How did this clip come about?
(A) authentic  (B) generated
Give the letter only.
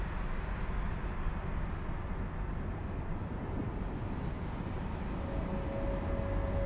A